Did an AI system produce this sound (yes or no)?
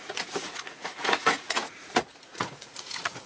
yes